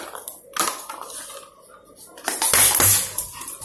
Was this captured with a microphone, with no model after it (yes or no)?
yes